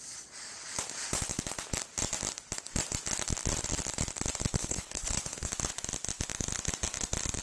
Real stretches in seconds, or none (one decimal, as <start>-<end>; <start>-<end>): 0.0-4.6; 5.5-7.4